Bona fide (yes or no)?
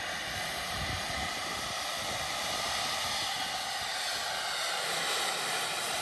yes